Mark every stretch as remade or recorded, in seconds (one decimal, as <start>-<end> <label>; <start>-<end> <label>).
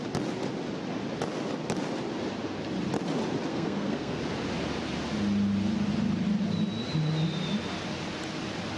0.0-3.5 recorded; 3.5-4.2 remade; 4.2-8.8 recorded